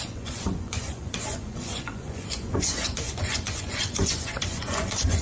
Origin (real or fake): fake